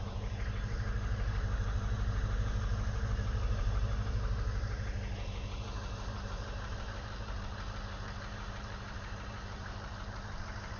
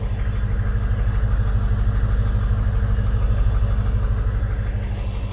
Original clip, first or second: second